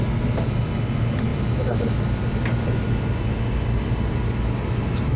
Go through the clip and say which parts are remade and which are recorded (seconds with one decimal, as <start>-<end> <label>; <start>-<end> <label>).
0.0-5.2 recorded

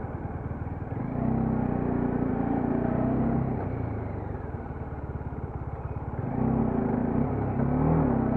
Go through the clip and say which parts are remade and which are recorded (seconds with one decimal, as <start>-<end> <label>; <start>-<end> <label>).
0.0-2.3 recorded; 2.3-6.6 remade; 6.6-7.0 recorded; 7.0-7.5 remade; 7.5-8.4 recorded

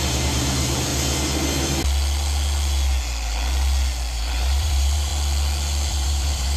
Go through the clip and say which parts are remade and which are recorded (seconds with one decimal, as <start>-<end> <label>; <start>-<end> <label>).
0.0-0.9 remade; 0.9-4.1 recorded; 4.1-5.1 remade; 5.1-5.9 recorded; 5.9-6.6 remade

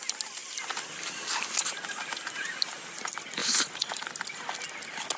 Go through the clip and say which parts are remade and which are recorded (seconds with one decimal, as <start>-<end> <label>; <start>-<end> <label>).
0.0-3.4 recorded; 3.4-4.1 remade; 4.1-5.2 recorded

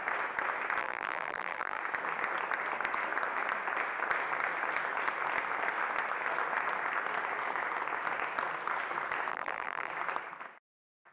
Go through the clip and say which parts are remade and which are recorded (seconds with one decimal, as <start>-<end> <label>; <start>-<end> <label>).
0.0-0.8 recorded; 0.8-1.8 remade; 1.8-9.3 recorded; 9.3-9.9 remade; 9.9-11.1 recorded

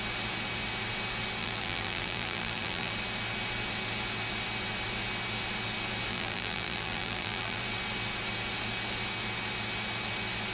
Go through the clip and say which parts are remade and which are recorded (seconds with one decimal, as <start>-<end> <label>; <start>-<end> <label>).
0.0-1.4 recorded; 1.4-2.9 remade; 2.9-6.1 recorded; 6.1-7.6 remade; 7.6-10.5 recorded

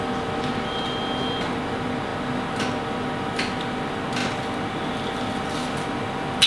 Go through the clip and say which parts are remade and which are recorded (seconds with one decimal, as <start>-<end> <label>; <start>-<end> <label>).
0.0-6.5 recorded

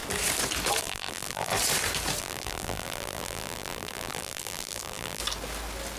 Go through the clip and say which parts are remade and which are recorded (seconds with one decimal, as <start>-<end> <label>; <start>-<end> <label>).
0.0-0.8 recorded; 0.8-1.5 remade; 1.5-2.2 recorded; 2.2-5.2 remade; 5.2-6.0 recorded